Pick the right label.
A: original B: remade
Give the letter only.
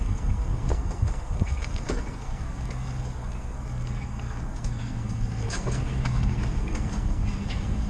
B